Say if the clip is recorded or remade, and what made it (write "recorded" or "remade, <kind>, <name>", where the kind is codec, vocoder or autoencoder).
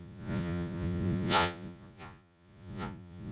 remade, vocoder, Vocos